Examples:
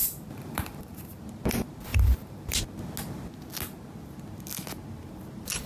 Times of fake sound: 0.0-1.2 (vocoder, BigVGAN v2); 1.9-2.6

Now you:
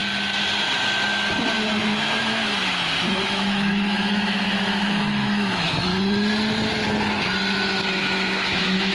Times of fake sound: 2.2-2.6 (autoencoder, DAC-VAE); 3.1-5.9; 8.0-8.9